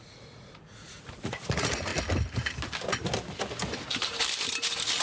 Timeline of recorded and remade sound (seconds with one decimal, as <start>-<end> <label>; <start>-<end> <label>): 0.0-1.9 remade; 1.9-5.0 recorded